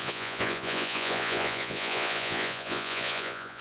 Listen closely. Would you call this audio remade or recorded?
remade